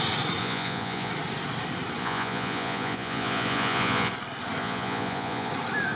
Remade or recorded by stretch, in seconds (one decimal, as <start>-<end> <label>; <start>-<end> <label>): 0.0-0.4 recorded; 0.4-1.1 remade; 1.1-2.0 recorded; 2.0-4.1 remade; 4.1-4.6 recorded; 4.6-5.5 remade; 5.5-6.0 recorded